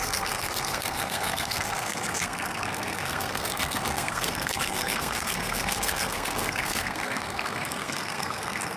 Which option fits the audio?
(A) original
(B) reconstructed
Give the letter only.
B